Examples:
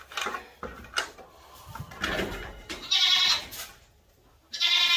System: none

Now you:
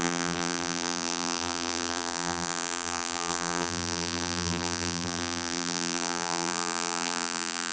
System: vocoder, BigVGAN v2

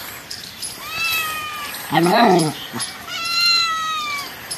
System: vocoder, BigVGAN v2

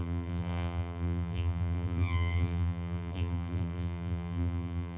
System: vocoder, BigVGAN v2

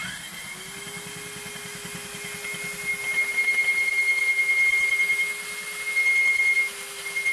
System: none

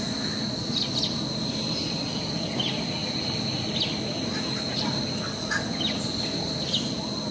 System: none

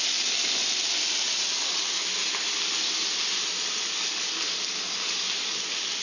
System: none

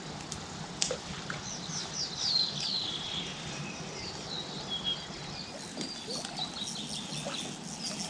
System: none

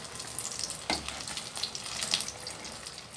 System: none